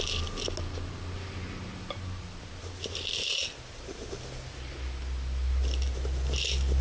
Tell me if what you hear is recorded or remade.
recorded